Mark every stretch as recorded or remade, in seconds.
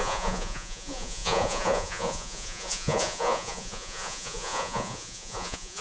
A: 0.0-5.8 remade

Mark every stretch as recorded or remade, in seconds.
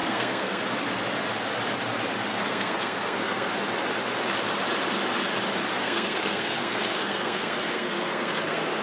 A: 0.0-0.6 remade; 0.6-2.3 recorded; 2.3-3.5 remade; 3.5-5.8 recorded; 5.8-8.8 remade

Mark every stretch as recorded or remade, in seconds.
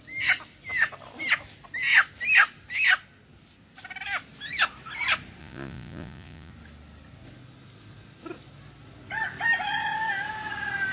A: 0.0-5.4 recorded; 5.4-6.5 remade; 6.5-10.9 recorded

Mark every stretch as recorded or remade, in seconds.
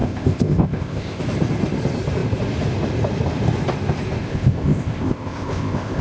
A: 0.0-1.2 remade; 1.2-4.2 recorded; 4.2-6.0 remade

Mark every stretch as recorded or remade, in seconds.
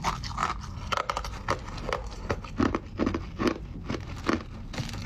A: 0.0-5.1 recorded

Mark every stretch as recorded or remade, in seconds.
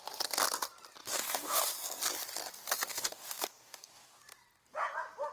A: 0.0-1.0 recorded; 1.0-1.6 remade; 1.6-2.9 recorded; 2.9-4.2 remade; 4.2-5.3 recorded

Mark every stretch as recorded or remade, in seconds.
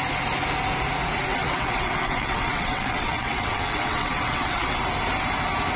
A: 0.0-1.3 recorded; 1.3-4.8 remade; 4.8-5.8 recorded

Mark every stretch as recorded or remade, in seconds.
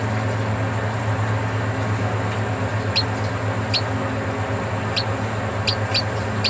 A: 0.0-6.5 recorded